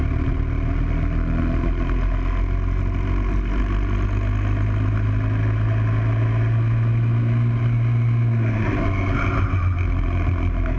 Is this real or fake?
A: real